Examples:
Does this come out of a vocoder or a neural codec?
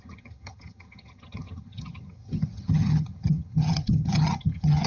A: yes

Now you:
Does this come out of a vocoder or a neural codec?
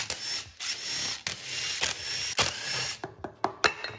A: no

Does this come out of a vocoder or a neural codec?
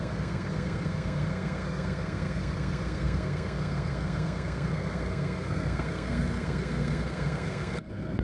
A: yes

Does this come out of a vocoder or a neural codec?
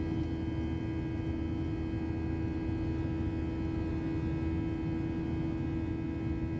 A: no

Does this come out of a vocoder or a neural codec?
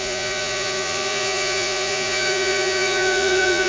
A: yes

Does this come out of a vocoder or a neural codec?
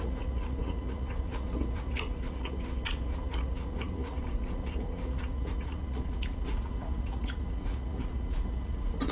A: yes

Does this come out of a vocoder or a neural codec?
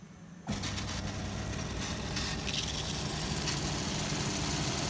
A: no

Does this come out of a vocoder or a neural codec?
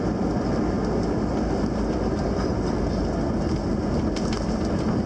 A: no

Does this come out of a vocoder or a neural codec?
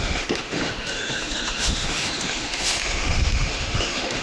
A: yes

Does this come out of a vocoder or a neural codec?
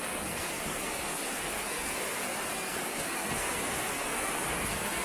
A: yes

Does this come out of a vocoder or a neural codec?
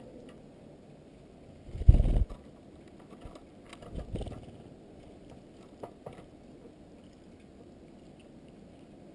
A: no